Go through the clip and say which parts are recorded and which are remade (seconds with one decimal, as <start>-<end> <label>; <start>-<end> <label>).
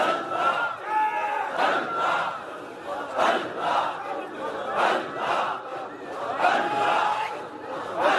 0.0-8.2 recorded